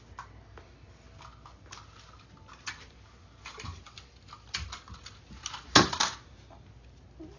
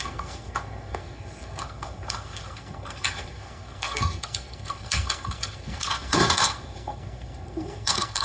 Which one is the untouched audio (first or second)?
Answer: first